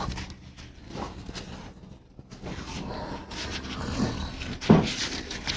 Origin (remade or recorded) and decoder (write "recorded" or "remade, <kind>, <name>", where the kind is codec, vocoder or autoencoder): recorded